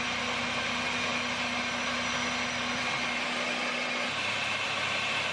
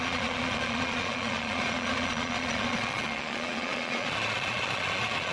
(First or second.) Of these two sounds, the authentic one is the first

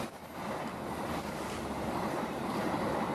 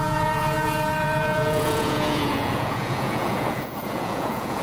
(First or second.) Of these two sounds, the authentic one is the first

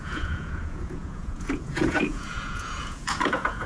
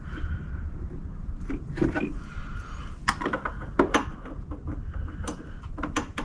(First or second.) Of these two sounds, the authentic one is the second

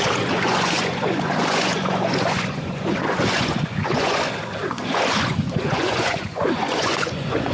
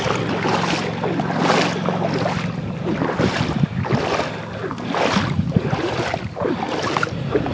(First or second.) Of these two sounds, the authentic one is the second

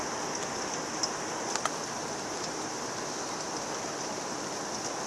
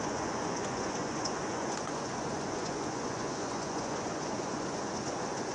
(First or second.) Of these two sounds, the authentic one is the first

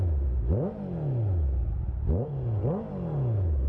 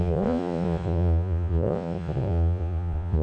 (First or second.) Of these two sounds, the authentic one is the first